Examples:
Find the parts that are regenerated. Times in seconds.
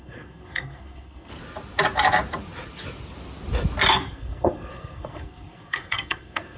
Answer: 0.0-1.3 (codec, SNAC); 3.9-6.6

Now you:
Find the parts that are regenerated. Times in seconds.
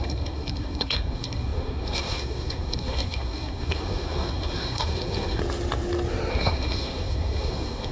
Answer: 0.0-5.4 (codec, SNAC); 6.3-7.9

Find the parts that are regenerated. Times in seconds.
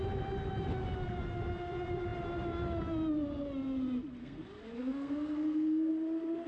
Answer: 4.2-5.9 (codec, SNAC)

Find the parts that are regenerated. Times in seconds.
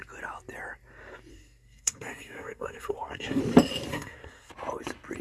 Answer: 1.3-3.4 (codec, SNAC); 3.9-4.5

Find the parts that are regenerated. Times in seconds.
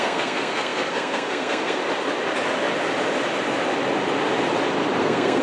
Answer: 0.0-1.8 (codec, SNAC); 5.0-5.4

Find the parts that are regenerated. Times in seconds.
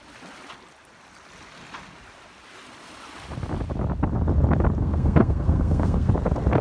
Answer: 4.8-6.1 (codec, SNAC)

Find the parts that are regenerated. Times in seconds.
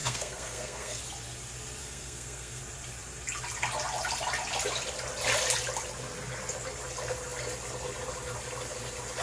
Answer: 0.0-1.0 (codec, SNAC); 1.8-2.6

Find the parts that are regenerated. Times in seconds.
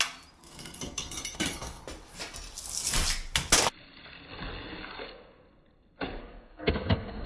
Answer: 0.4-1.8 (codec, SNAC); 6.2-7.3